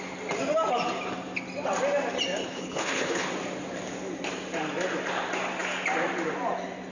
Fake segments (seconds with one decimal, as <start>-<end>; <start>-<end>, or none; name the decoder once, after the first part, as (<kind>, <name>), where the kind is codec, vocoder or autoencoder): 2.4-3.3 (codec, HILCodec)